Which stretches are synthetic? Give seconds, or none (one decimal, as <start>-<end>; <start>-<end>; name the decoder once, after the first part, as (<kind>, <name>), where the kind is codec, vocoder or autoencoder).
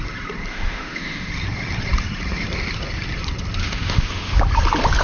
0.5-1.3 (autoencoder, DAC-VAE); 3.6-4.4